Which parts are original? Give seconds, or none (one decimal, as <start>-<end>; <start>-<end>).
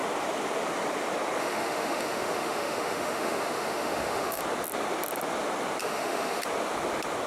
0.0-1.4; 4.4-5.8; 6.4-7.3